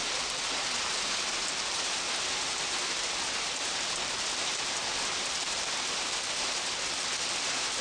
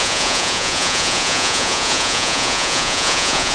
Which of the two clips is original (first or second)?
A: first